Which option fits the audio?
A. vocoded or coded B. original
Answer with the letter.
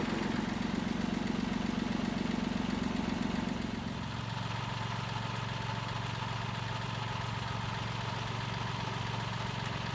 B